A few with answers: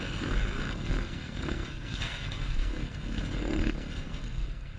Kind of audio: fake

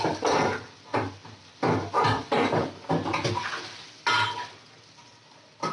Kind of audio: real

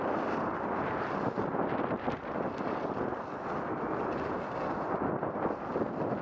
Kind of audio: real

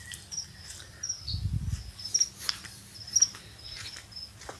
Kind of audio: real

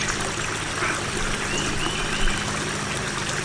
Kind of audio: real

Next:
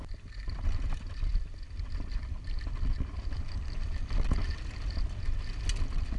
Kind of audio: real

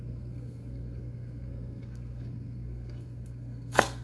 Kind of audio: fake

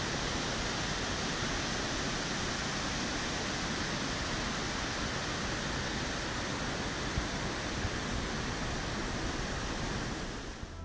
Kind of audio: real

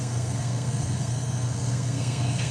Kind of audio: fake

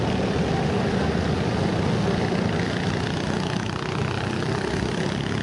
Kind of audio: real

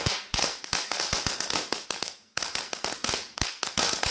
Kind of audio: fake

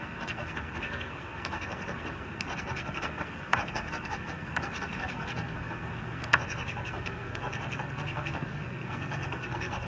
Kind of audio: fake